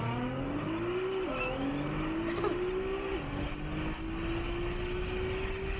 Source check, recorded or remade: recorded